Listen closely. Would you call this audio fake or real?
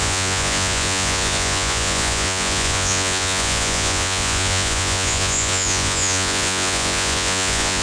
fake